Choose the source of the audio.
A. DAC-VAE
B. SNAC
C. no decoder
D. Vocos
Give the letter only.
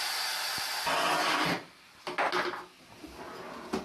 C